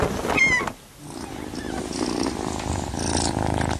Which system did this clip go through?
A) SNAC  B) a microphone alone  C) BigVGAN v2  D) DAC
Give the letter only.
B